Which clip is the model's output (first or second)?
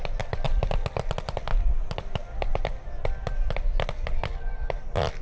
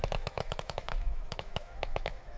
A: second